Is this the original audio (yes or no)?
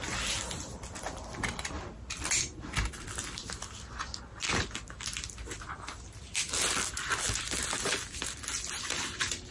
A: yes